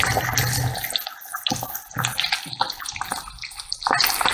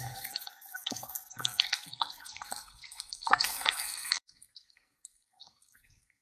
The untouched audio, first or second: first